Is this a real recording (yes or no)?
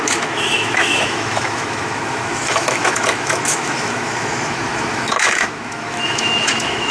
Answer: no